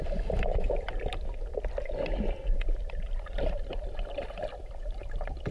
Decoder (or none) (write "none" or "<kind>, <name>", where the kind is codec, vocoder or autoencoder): none